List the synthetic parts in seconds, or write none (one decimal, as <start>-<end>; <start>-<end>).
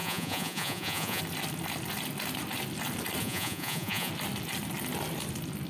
0.0-1.2; 3.2-4.1